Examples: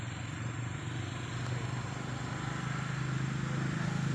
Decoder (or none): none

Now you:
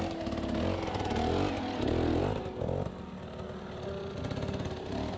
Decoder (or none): none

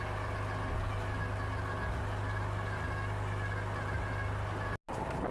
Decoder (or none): none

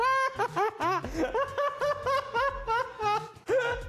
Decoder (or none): none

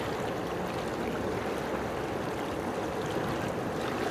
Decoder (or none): none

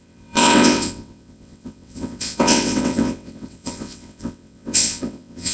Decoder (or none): vocoder, WaveNeXt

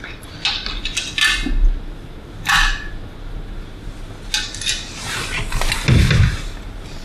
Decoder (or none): none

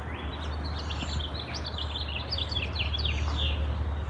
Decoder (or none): none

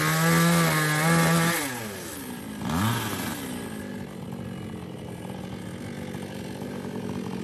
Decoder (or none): none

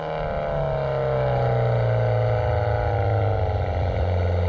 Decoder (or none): none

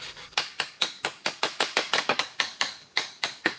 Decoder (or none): codec, DAC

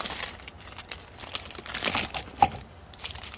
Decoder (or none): none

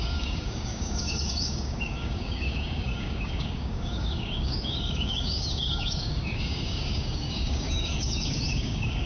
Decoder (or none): codec, DAC